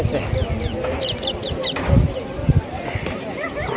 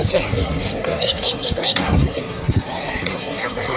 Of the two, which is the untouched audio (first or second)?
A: first